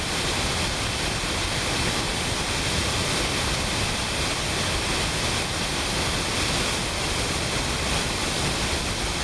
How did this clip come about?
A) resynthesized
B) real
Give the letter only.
B